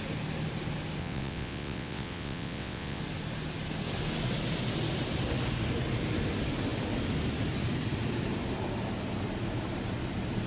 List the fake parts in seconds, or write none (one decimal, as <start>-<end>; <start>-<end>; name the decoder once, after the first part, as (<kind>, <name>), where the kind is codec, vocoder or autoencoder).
1.0-3.0 (vocoder, WaveNeXt)

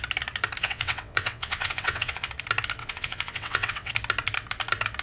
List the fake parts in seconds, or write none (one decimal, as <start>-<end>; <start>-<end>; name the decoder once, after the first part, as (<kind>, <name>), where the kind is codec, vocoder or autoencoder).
0.6-2.3 (vocoder, WaveNeXt); 2.8-3.9

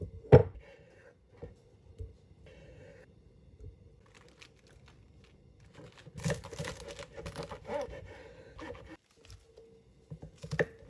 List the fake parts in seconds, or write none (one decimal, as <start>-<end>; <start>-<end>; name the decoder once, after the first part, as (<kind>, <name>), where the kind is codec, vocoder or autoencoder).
6.0-6.7 (vocoder, BigVGAN v2)

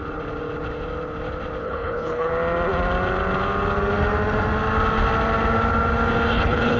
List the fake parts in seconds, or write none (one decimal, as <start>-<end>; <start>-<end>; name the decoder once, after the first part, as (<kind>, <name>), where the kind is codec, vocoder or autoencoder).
1.6-2.3 (codec, HILCodec); 6.3-6.8

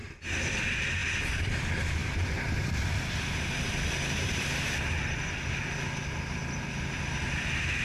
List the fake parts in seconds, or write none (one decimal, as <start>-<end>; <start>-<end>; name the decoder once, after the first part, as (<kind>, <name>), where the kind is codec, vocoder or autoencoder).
none

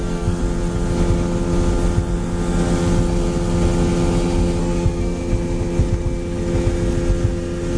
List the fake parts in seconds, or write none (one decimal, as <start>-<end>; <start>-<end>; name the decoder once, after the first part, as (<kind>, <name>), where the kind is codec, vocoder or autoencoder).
0.0-0.4 (codec, SNAC); 4.6-5.2

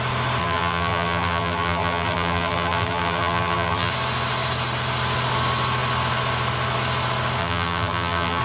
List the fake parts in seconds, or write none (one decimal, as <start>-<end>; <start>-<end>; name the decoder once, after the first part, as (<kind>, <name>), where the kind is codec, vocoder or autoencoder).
0.4-3.9 (vocoder, BigVGAN v2); 7.4-8.4